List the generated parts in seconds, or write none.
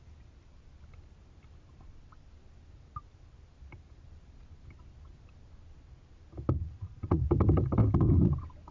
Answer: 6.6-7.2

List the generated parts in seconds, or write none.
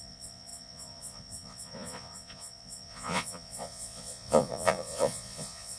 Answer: 0.0-5.8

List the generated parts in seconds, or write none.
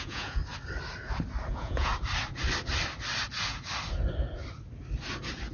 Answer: 0.0-0.4; 1.5-1.9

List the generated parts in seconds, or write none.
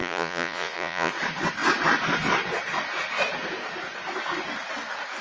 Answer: 0.0-1.1